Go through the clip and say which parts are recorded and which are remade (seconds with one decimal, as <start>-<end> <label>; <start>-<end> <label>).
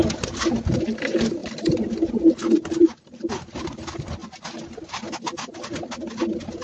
0.0-6.6 recorded